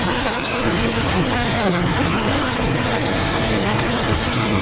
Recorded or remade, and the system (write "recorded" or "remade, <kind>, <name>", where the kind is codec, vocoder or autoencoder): remade, codec, SNAC